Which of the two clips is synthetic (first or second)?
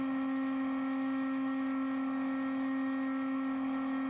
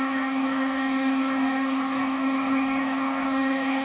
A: second